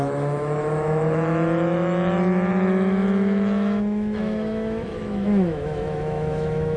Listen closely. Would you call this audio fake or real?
fake